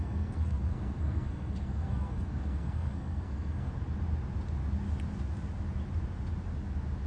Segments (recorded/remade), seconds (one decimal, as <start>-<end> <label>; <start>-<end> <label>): 0.0-3.7 remade; 3.7-7.1 recorded